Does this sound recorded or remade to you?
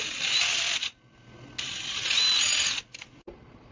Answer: recorded